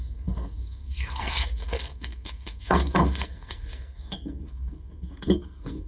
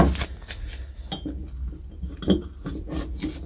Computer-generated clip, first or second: first